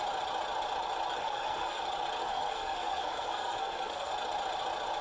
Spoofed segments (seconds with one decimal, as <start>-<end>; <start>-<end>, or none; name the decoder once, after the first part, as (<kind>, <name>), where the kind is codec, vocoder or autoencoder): 1.2-1.8 (codec, SNAC); 2.2-4.1